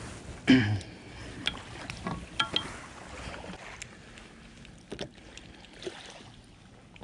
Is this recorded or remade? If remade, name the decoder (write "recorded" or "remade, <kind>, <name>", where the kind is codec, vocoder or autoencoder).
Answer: recorded